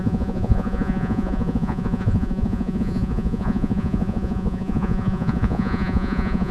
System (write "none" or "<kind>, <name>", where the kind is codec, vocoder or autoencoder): vocoder, Vocos